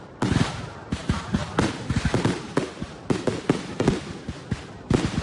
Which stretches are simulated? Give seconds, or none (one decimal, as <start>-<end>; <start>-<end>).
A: none